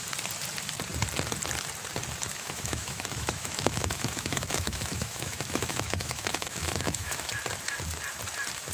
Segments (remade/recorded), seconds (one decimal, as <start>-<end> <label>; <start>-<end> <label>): 0.0-2.3 recorded; 2.3-7.3 remade; 7.3-8.7 recorded